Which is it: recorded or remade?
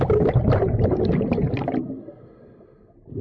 recorded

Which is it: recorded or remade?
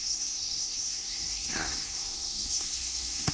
remade